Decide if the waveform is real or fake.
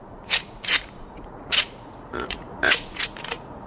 fake